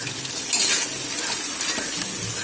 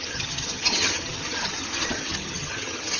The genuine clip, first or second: first